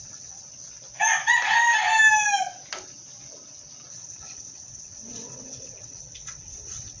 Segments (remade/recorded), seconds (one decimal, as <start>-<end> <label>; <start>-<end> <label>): 0.0-0.4 remade; 0.4-3.9 recorded; 3.9-7.0 remade

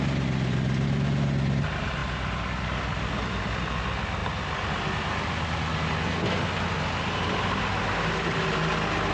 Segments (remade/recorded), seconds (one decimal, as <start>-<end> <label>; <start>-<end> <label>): 0.0-9.1 recorded

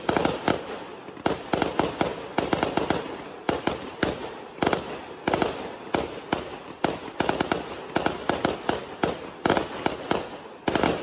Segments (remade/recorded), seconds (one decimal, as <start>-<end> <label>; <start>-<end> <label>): 0.0-11.0 recorded

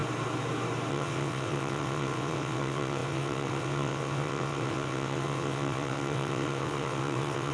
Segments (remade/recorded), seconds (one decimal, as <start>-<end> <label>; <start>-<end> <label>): 0.0-0.9 recorded; 0.9-7.5 remade

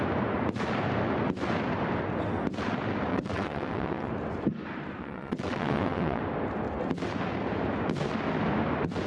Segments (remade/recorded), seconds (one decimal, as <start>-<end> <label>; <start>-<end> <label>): 0.0-3.1 recorded; 3.1-4.1 remade; 4.1-5.0 recorded; 5.0-6.2 remade; 6.2-9.1 recorded

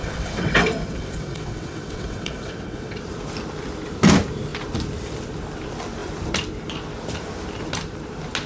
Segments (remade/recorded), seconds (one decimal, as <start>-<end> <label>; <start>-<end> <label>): 0.0-3.0 remade; 3.0-8.5 recorded

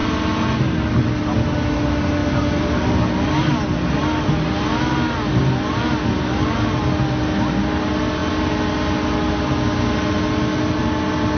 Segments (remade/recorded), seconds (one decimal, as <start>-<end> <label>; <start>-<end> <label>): 0.0-11.4 recorded

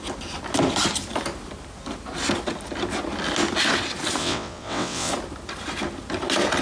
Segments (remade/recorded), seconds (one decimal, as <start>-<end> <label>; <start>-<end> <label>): 0.0-4.2 recorded; 4.2-5.1 remade; 5.1-6.6 recorded